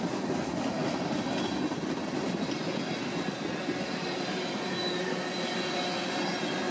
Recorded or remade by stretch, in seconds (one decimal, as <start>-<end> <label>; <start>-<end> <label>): 0.0-6.7 recorded